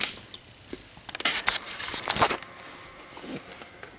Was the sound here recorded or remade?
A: recorded